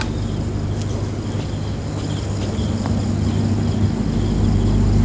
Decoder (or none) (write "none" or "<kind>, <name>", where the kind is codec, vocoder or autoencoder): none